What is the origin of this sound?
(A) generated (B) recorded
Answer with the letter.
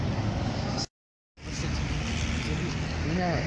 B